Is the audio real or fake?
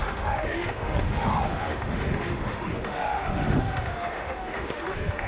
fake